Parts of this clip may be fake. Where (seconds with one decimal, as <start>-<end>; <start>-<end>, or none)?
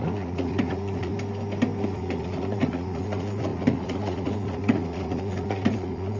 0.0-1.1; 1.8-6.2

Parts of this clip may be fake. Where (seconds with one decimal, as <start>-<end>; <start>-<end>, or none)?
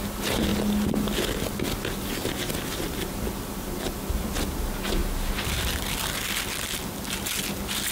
none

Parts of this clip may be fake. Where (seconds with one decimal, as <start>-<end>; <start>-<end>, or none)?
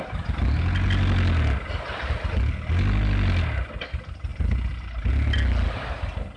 none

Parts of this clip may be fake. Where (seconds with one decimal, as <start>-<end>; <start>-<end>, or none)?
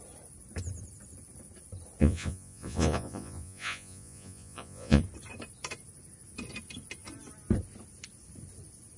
2.0-5.0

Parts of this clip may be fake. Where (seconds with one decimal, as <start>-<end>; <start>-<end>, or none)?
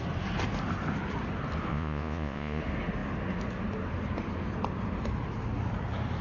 1.7-2.6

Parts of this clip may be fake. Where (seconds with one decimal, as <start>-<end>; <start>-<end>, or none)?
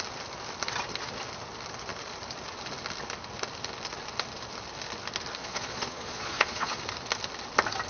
5.4-6.8